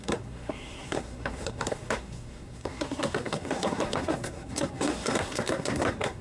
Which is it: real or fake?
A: fake